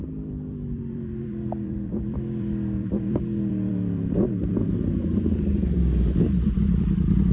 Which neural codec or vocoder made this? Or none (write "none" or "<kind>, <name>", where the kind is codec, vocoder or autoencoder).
vocoder, BigVGAN v2